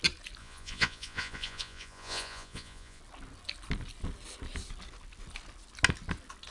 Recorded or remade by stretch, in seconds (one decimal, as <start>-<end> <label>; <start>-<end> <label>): 0.0-0.4 recorded; 0.4-3.0 remade; 3.0-6.5 recorded